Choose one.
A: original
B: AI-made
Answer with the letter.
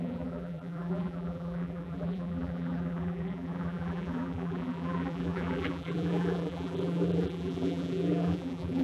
B